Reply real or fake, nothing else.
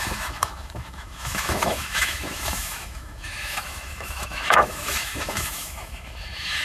fake